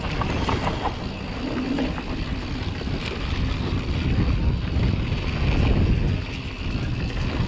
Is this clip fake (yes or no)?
no